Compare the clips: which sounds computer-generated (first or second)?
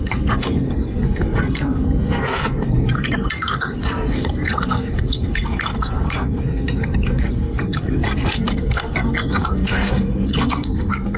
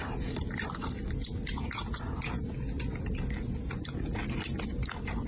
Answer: first